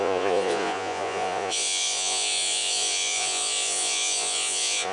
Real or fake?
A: fake